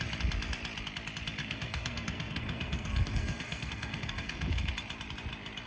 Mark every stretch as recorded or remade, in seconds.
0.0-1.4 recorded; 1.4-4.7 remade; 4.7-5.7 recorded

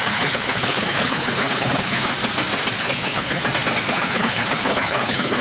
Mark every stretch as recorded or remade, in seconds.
0.0-2.1 remade; 2.1-2.8 recorded; 2.8-3.4 remade; 3.4-3.9 recorded; 3.9-5.4 remade